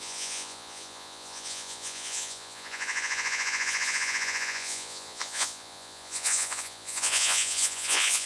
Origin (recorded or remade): remade